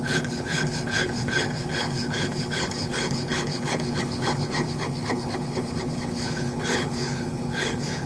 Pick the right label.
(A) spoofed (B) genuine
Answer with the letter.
A